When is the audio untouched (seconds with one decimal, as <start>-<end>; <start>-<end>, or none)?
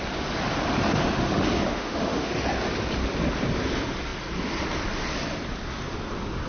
0.0-1.7; 2.3-6.5